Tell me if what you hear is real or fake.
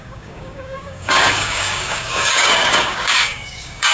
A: fake